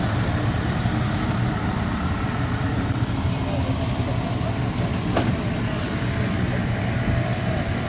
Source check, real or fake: real